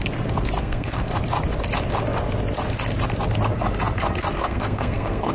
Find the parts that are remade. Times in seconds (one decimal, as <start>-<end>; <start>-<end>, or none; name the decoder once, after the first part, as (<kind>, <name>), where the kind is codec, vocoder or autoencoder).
0.6-1.1 (codec, SNAC); 4.3-5.3

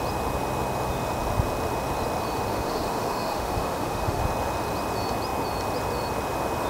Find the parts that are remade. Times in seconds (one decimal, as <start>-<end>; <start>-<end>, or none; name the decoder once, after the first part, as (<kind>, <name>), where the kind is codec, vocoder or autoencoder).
2.5-4.2 (autoencoder, DAC-VAE)

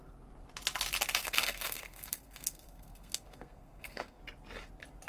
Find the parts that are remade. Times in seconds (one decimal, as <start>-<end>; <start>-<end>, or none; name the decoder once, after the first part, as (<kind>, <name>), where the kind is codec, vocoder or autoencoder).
1.2-4.2 (codec, SNAC)

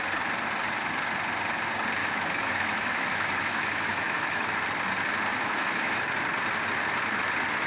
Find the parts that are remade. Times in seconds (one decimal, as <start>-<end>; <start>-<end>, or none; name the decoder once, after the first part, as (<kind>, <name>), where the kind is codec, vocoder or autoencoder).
2.0-4.5 (autoencoder, DAC-VAE); 5.3-6.0

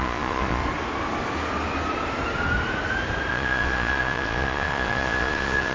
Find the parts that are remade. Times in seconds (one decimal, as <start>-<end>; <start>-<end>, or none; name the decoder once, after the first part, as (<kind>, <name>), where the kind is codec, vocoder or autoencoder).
0.0-0.6 (vocoder, Vocos); 3.3-5.7

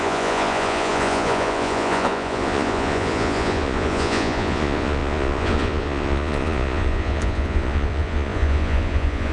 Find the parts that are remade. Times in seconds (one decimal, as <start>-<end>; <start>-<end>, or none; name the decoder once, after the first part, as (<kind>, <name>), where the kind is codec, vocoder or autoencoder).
0.0-9.3 (vocoder, Vocos)

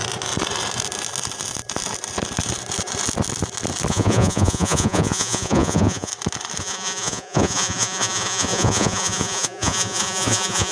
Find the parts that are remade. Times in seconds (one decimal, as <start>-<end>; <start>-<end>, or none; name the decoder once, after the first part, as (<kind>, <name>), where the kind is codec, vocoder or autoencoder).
3.9-6.1 (vocoder, Vocos); 6.6-10.7

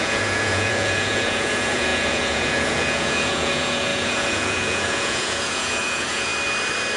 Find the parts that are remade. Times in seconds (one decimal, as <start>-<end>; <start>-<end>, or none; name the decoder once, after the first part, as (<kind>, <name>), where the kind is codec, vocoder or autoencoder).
0.0-6.3 (vocoder, Vocos)